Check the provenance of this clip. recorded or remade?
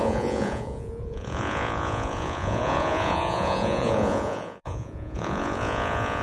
remade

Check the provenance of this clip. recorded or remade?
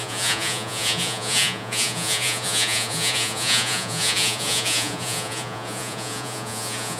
remade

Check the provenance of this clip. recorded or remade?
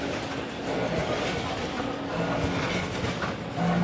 recorded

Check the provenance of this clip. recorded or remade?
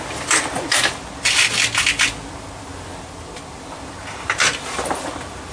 recorded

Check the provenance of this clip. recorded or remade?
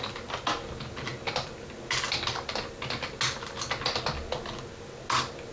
recorded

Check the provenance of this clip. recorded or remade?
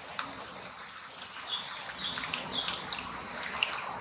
recorded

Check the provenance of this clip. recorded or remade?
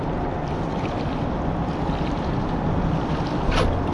remade